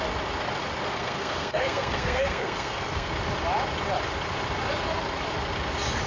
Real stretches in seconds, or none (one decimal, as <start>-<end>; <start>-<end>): 0.0-0.9; 3.1-6.1